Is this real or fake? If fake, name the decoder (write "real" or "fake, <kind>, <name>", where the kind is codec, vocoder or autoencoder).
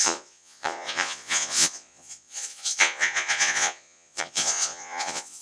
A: fake, vocoder, Vocos